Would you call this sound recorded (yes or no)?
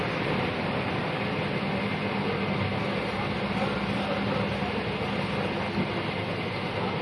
yes